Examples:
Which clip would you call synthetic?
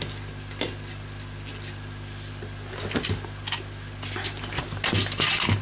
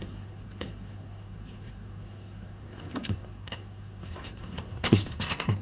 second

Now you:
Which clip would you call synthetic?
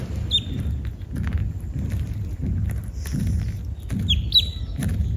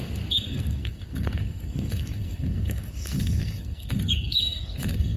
second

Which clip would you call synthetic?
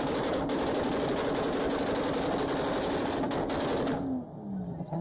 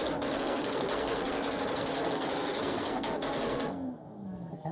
second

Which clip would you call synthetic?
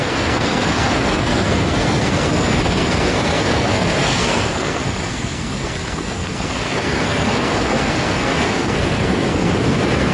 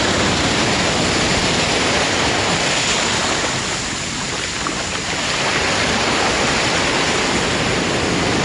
first